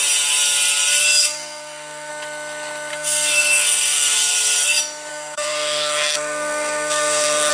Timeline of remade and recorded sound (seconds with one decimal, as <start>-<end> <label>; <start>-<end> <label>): 0.0-1.2 recorded; 1.2-2.1 remade; 2.1-2.9 recorded; 2.9-4.3 remade; 4.3-5.1 recorded; 5.1-7.5 remade